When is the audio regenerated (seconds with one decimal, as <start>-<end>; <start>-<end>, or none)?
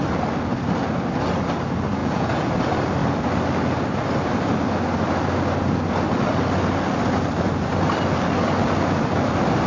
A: 2.0-2.5